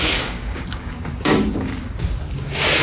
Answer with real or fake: fake